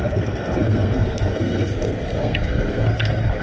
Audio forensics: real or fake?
fake